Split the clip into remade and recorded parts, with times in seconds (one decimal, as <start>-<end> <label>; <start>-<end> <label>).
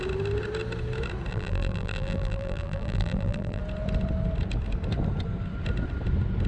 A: 0.0-1.3 recorded; 1.3-3.6 remade; 3.6-6.5 recorded